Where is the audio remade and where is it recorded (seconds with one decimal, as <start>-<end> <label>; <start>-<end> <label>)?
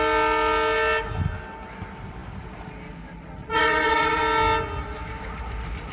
0.0-3.4 recorded; 3.4-4.2 remade; 4.2-5.9 recorded